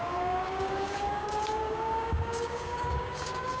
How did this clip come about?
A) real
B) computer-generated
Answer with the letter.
B